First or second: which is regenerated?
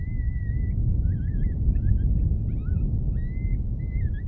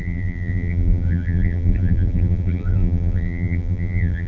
second